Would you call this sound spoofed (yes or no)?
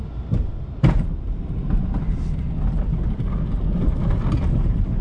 no